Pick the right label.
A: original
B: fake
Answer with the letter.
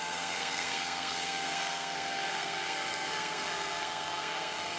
B